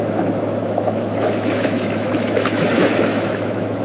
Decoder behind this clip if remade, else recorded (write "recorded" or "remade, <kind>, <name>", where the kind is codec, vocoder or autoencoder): remade, autoencoder, DAC-VAE